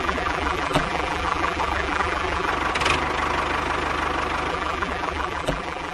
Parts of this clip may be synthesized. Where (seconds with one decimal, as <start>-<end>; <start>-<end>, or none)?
0.0-2.5; 4.5-5.9